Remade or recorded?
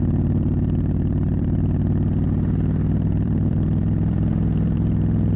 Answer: remade